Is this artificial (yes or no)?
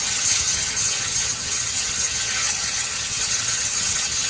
yes